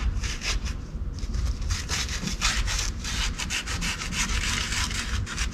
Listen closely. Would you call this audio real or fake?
real